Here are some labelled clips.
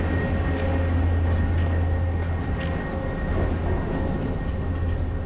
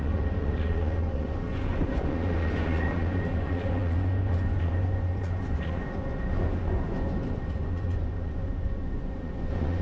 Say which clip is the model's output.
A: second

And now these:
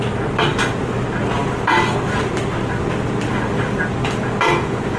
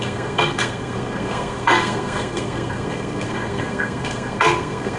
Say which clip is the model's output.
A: second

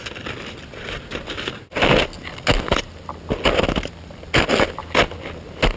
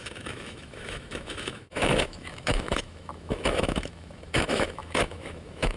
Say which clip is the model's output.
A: second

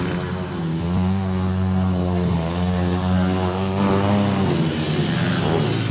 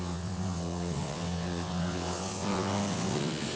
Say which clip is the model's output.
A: second